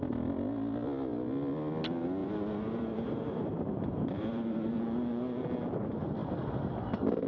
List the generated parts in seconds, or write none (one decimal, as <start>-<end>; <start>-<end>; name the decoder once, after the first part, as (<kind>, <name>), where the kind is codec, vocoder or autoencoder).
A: 2.2-4.8 (vocoder, BigVGAN v2)